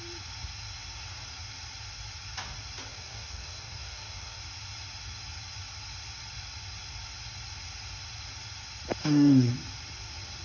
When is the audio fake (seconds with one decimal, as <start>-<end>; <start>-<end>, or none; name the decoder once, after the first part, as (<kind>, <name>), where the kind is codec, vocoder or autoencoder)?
2.9-4.4 (codec, DAC); 9.0-9.5